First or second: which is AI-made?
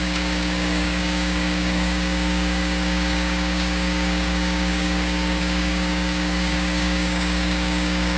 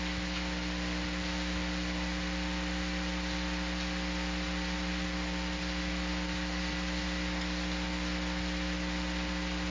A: first